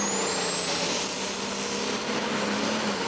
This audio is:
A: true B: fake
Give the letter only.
A